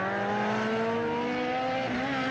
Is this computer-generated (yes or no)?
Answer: no